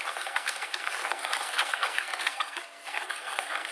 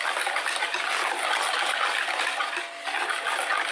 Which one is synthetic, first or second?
first